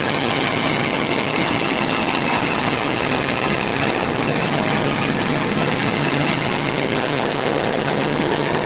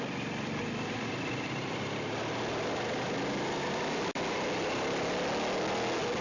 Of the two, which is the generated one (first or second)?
first